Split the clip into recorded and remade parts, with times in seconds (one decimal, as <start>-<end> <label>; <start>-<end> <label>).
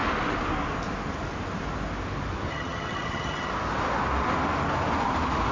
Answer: 0.0-2.5 recorded; 2.5-3.5 remade; 3.5-5.5 recorded